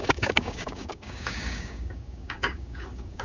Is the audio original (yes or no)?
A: no